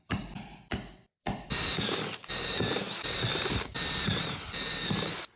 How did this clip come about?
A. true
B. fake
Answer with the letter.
B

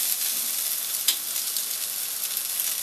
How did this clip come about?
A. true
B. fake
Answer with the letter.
A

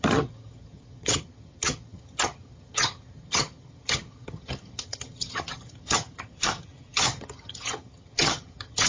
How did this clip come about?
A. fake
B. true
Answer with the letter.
A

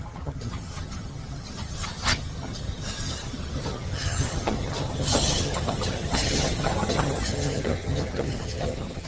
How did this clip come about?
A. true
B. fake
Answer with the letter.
B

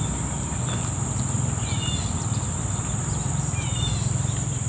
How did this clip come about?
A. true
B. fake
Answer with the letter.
B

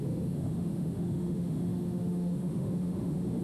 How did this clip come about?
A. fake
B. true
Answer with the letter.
A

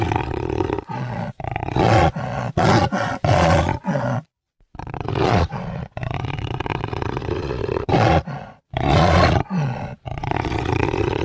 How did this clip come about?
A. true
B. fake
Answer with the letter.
B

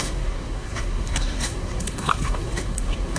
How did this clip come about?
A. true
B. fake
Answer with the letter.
B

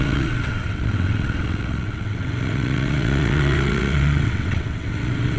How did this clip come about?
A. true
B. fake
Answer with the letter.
B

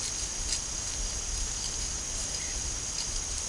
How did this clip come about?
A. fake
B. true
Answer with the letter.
B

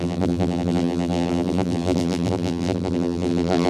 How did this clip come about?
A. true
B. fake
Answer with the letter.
B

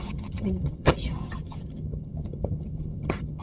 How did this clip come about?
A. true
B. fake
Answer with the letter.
B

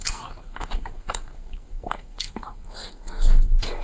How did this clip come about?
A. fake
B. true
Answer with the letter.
A